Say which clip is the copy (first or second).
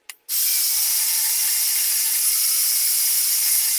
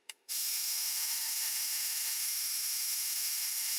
second